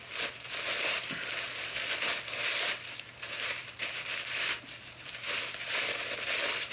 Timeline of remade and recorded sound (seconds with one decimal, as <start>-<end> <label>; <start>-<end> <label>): 0.0-2.5 recorded; 2.5-5.4 remade; 5.4-6.7 recorded